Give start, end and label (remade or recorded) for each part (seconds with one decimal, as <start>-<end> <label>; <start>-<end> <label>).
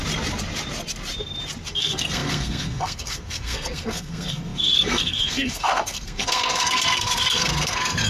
0.0-1.7 recorded; 1.7-8.1 remade